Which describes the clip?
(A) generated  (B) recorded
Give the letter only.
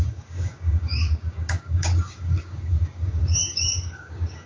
A